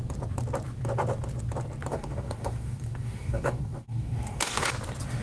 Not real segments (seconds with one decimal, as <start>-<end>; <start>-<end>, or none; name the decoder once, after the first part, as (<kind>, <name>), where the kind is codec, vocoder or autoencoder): 1.9-4.7 (codec, DAC)